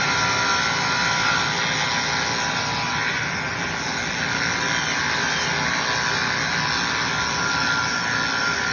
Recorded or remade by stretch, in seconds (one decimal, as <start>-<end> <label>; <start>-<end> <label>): 0.0-8.7 recorded